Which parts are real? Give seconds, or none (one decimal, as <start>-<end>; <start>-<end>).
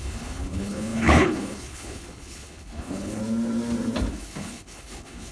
3.2-4.1